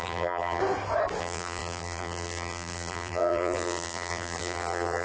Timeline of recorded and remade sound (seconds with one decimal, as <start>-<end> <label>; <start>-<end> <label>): 0.0-0.6 remade; 0.6-1.2 recorded; 1.2-5.0 remade